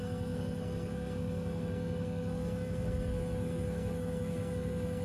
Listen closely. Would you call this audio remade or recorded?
remade